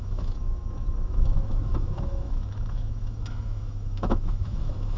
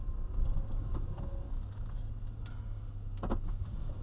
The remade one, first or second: first